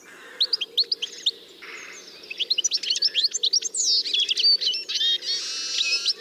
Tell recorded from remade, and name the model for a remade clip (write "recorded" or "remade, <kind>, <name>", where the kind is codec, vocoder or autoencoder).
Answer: recorded